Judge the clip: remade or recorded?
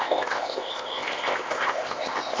remade